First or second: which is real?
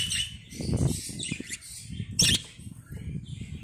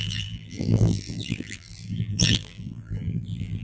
first